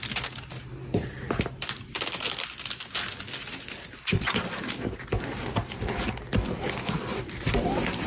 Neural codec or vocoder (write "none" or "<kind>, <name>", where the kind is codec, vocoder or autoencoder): none